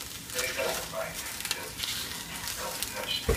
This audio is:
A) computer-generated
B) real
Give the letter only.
B